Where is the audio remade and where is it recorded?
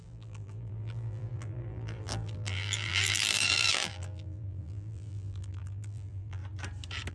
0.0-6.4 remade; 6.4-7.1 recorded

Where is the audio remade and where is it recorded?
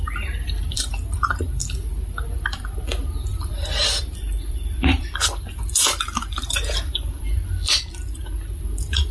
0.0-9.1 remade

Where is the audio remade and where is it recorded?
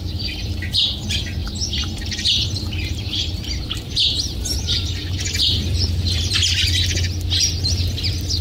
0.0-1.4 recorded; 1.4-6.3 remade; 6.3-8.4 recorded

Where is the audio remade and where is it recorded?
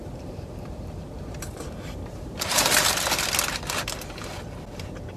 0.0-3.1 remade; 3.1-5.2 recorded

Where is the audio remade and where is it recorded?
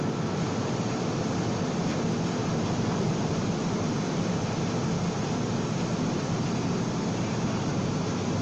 0.0-2.4 recorded; 2.4-4.7 remade; 4.7-8.4 recorded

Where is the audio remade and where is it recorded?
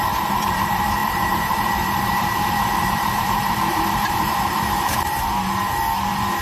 0.0-6.4 remade